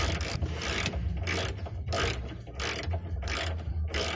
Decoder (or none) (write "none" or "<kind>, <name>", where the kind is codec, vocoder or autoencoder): none